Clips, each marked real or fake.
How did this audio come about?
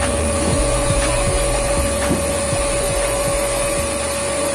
fake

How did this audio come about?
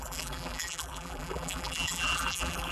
fake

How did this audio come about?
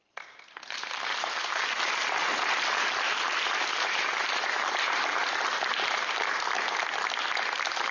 real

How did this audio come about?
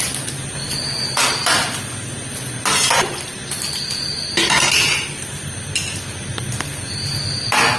real